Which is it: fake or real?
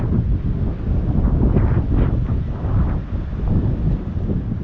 real